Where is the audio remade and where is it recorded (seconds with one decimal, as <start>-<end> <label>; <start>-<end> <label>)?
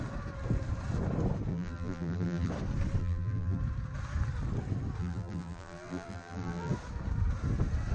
0.0-1.5 recorded; 1.5-2.5 remade; 2.5-3.0 recorded; 3.0-3.6 remade; 3.6-5.0 recorded; 5.0-6.7 remade; 6.7-7.9 recorded